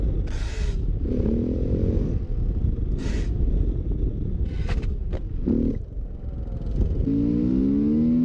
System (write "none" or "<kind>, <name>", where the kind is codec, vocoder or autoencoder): none